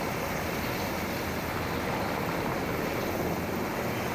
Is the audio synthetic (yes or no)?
no